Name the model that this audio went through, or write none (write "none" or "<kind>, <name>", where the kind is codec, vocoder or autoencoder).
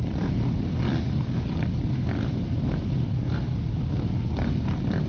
none